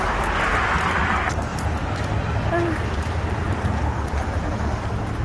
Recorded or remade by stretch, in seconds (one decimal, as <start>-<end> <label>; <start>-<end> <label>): 0.0-5.2 recorded